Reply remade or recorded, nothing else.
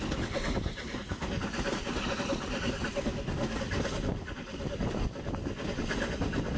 recorded